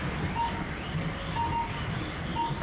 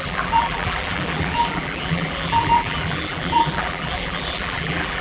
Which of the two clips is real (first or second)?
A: first